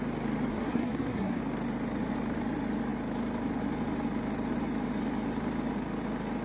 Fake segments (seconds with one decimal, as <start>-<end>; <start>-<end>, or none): 0.5-1.4